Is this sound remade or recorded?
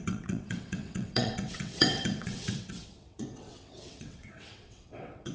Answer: remade